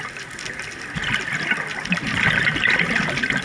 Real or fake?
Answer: real